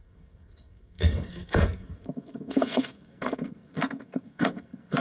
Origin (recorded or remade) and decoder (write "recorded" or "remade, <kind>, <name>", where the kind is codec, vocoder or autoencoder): remade, codec, SNAC